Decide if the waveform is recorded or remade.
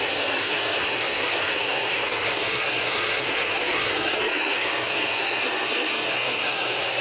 remade